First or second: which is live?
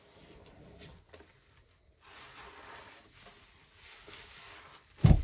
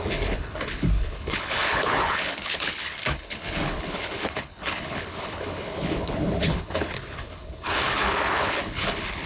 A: first